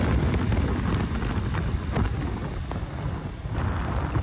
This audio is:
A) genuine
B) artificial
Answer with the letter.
B